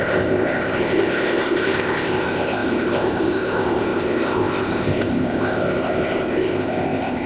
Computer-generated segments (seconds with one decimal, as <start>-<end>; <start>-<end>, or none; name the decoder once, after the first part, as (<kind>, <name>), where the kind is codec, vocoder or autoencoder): 0.0-7.3 (codec, ZipCodec)